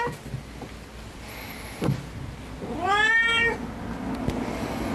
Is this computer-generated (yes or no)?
no